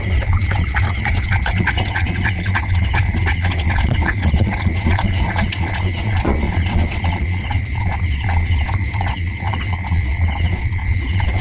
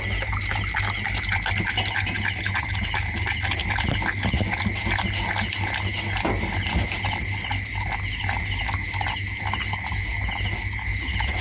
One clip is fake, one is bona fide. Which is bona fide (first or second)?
second